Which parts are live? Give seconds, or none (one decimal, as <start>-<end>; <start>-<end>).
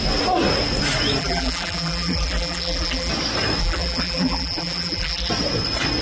0.0-1.2; 3.1-3.6; 5.3-6.0